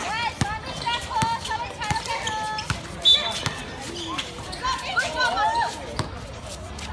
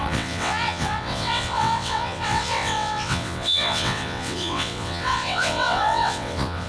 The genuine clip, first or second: first